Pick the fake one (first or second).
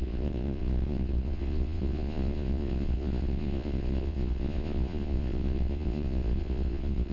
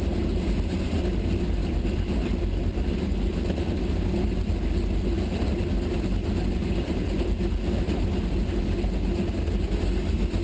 first